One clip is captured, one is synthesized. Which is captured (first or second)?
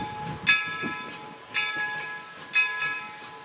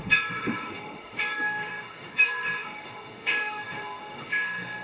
first